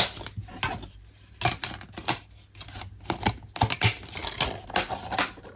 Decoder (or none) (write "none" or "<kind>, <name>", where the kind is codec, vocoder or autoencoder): none